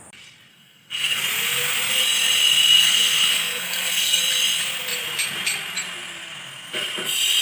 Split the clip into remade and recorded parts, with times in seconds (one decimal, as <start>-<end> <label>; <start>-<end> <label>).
0.0-0.5 recorded; 0.5-1.2 remade; 1.2-2.8 recorded; 2.8-4.2 remade; 4.2-7.4 recorded